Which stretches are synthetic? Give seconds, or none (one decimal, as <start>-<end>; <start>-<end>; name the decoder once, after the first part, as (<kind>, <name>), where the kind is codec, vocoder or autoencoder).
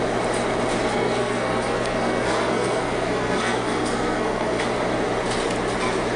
0.9-4.6 (codec, SNAC)